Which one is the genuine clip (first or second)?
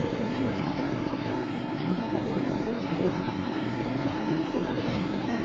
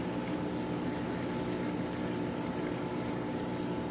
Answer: second